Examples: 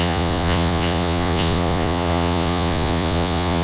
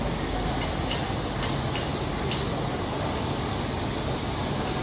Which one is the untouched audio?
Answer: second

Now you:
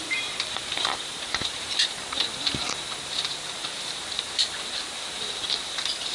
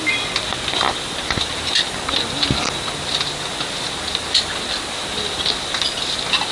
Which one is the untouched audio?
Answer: second